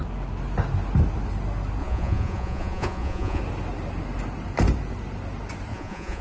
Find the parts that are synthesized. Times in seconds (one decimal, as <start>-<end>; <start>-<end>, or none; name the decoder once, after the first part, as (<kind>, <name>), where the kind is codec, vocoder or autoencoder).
1.8-3.4 (vocoder, Vocos); 5.7-6.2